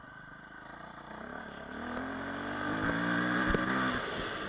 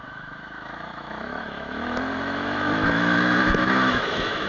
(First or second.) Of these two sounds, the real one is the first